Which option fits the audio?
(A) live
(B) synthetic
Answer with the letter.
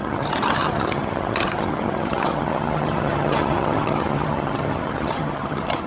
B